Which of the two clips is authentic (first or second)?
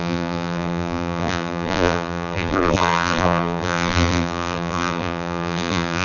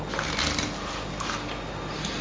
second